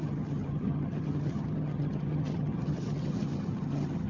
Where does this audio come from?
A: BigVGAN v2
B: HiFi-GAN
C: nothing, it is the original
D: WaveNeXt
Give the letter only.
B